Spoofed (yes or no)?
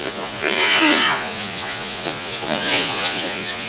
yes